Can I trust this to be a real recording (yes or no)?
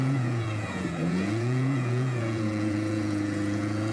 no